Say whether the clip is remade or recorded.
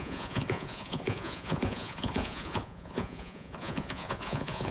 remade